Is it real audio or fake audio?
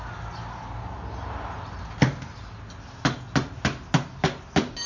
real